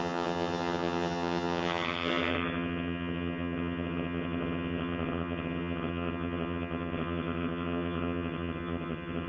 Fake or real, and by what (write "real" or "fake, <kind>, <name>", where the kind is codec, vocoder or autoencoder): fake, vocoder, HiFi-GAN